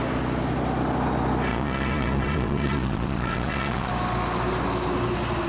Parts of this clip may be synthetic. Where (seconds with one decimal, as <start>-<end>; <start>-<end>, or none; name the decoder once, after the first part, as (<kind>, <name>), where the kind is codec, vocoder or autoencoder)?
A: 1.5-3.9 (vocoder, Vocos)